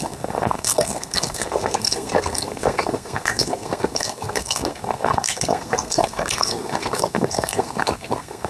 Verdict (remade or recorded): remade